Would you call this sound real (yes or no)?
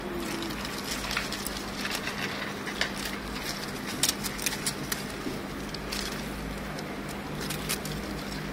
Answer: yes